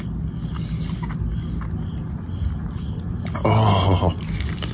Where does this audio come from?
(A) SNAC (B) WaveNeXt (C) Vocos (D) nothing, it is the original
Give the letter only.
D